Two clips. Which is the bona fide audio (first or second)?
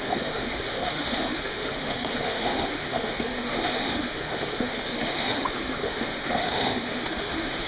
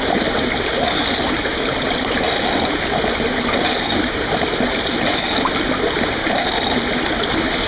second